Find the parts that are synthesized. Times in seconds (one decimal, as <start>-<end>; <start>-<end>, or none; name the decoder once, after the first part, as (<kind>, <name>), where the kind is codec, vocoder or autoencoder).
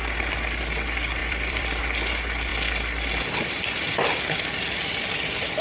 1.2-1.8 (vocoder, BigVGAN v2)